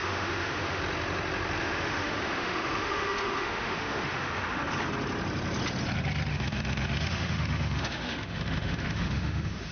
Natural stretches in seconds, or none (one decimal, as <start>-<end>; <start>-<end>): 0.8-1.6; 4.6-6.3